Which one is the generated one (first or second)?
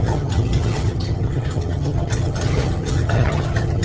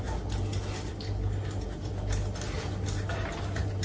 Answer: first